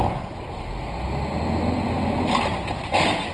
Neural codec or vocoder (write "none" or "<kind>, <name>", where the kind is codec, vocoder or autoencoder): none